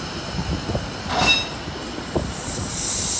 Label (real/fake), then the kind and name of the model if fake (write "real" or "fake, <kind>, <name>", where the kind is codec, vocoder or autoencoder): real